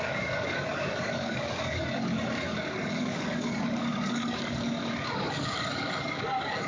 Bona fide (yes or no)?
no